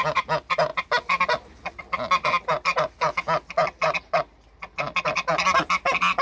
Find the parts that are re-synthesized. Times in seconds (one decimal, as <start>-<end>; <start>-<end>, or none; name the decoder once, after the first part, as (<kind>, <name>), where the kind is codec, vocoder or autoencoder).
none